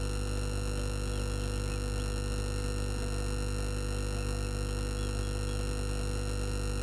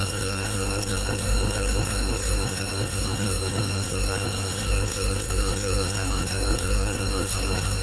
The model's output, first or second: second